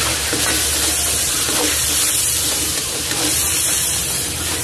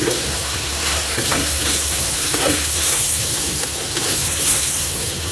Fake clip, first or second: second